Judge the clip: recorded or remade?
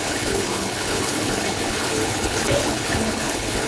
remade